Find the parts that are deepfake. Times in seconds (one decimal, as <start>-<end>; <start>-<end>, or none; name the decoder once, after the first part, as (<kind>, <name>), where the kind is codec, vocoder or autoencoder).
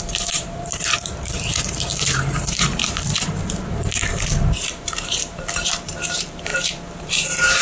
0.0-6.5 (vocoder, BigVGAN v2); 7.1-7.6